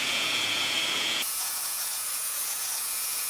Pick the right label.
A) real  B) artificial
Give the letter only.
B